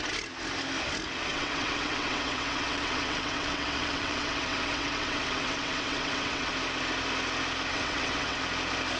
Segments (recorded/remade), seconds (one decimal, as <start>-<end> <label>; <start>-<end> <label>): 0.0-1.3 recorded; 1.3-6.5 remade; 6.5-7.7 recorded; 7.7-8.4 remade; 8.4-9.0 recorded